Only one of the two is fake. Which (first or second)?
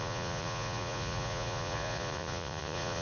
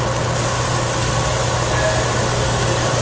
first